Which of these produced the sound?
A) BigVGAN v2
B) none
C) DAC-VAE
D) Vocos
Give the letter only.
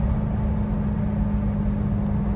B